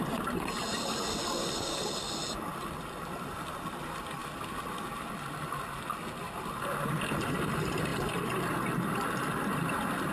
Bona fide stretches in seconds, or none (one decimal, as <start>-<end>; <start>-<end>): 0.0-10.1